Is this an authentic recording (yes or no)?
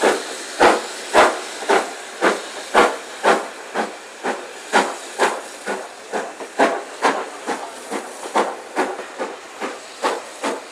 yes